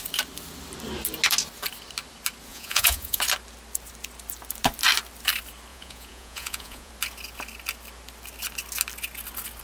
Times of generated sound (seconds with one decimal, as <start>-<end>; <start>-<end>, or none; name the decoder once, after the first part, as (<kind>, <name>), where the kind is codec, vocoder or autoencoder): 2.5-3.2 (vocoder, Vocos); 5.7-6.9